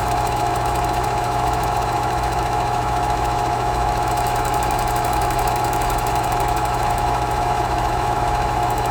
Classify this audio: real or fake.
fake